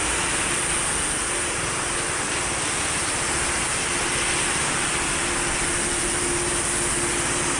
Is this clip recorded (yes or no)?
yes